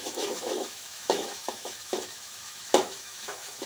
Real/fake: fake